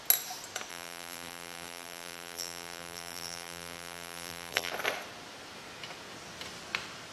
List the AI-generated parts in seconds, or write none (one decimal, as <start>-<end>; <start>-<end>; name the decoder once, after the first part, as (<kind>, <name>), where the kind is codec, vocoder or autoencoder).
0.7-4.7 (vocoder, BigVGAN v2)